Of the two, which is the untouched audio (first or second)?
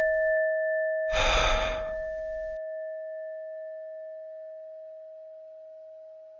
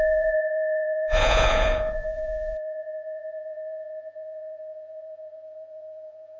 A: first